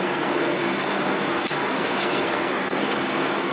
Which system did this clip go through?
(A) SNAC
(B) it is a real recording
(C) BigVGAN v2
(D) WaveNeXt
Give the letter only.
A